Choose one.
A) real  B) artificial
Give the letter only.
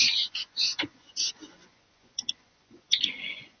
B